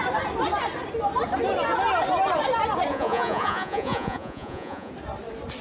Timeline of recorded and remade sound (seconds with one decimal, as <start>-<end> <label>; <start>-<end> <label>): 0.0-2.9 recorded; 2.9-4.9 remade; 4.9-5.6 recorded